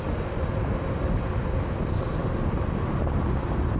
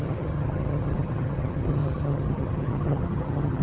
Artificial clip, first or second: second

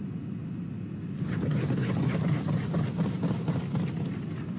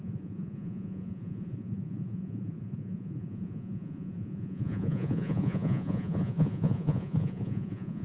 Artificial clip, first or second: second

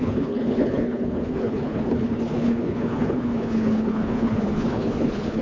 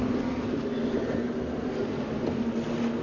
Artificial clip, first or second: first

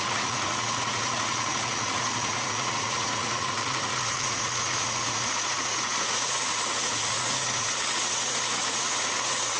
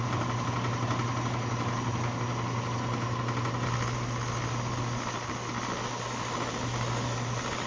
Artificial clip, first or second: first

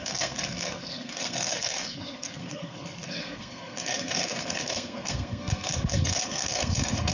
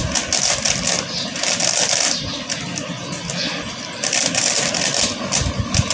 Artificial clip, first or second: first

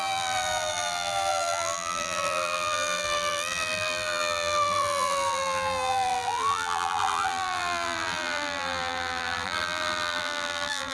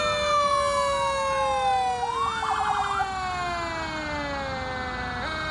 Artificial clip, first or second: first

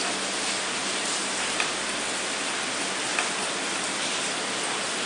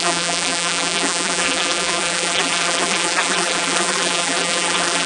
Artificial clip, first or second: second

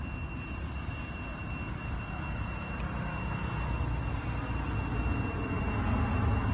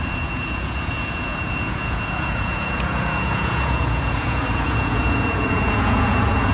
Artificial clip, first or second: second